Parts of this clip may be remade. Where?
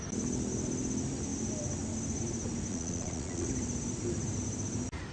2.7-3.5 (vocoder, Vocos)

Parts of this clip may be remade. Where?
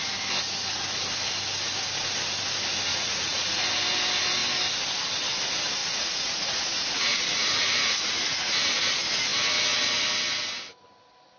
2.9-3.7 (vocoder, Vocos); 5.8-8.9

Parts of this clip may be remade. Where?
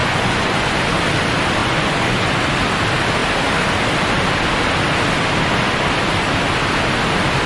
0.0-0.7 (vocoder, Vocos); 1.6-2.4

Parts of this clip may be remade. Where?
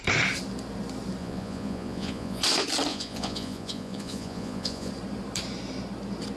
1.2-2.4 (vocoder, Vocos); 2.9-4.9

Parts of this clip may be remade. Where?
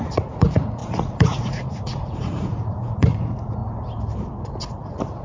0.0-3.6 (vocoder, Vocos); 4.7-5.2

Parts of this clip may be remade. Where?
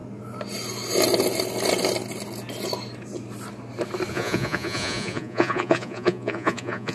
4.1-6.9 (vocoder, Vocos)